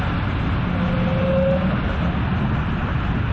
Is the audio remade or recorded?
recorded